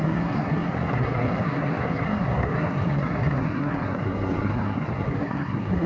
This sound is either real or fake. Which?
fake